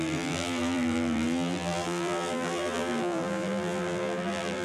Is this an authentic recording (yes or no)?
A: no